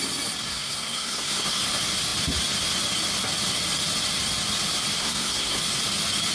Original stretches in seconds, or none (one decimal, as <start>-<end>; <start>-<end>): 0.0-0.5; 1.6-5.0; 5.6-6.3